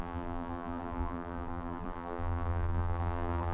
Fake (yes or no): yes